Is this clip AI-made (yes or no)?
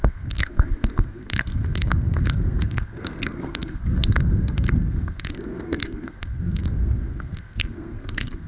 yes